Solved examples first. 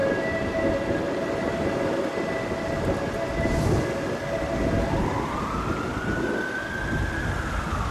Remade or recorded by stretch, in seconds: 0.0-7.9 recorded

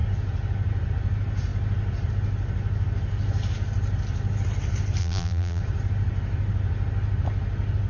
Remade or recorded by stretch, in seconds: 0.0-5.0 recorded; 5.0-5.6 remade; 5.6-7.9 recorded

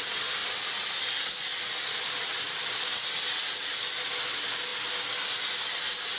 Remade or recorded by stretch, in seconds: 0.0-6.2 recorded